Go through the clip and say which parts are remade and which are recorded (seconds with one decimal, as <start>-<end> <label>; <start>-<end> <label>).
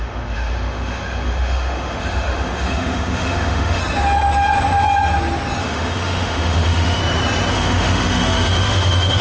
0.0-3.8 remade; 3.8-5.6 recorded; 5.6-7.0 remade; 7.0-7.5 recorded; 7.5-9.2 remade